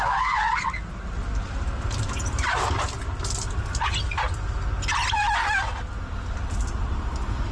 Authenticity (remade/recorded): recorded